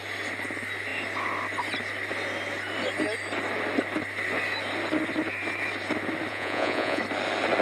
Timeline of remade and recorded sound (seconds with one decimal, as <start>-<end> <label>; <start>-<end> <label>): 0.0-6.3 recorded; 6.3-7.0 remade; 7.0-7.6 recorded